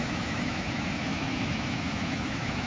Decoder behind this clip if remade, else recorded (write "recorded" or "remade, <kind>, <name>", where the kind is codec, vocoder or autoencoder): remade, autoencoder, DAC-VAE